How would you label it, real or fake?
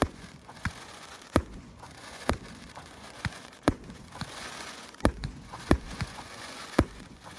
fake